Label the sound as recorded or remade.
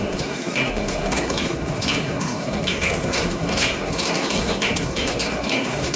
remade